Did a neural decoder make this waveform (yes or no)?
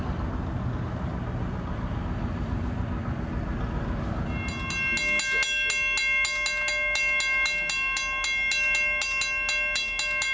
no